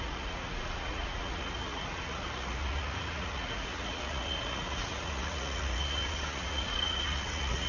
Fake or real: fake